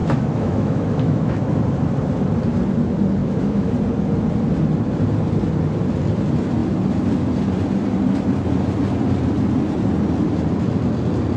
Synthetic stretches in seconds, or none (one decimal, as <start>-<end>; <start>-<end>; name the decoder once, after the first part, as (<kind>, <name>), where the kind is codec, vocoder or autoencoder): 0.0-1.4 (autoencoder, DAC-VAE); 3.2-3.7